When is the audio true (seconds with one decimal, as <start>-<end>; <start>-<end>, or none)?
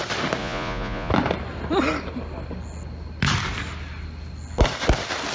0.0-0.4; 1.1-5.3